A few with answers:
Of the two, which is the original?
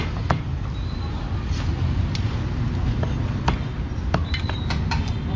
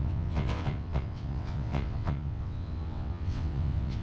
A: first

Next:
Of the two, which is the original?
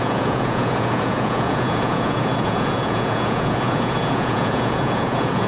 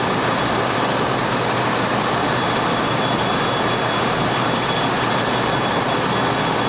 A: second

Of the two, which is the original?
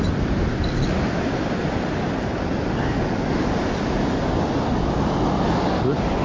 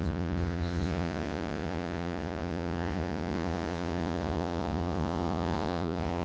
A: first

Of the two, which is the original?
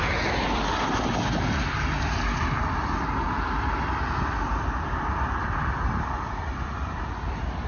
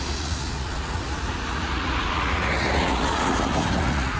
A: first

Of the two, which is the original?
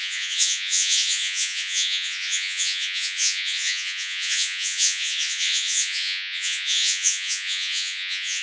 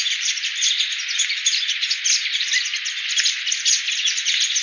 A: second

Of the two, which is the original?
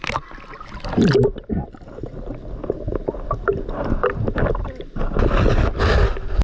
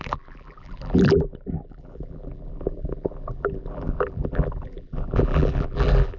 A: first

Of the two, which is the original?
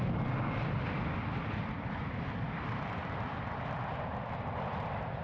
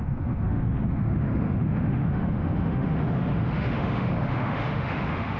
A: first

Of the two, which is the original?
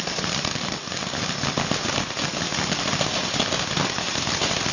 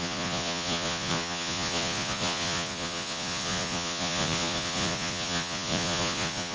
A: first